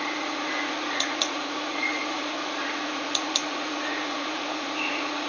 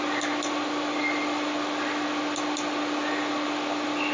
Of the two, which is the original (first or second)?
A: second